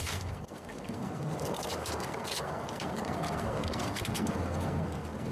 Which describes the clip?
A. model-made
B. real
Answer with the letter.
A